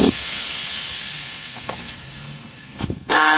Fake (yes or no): yes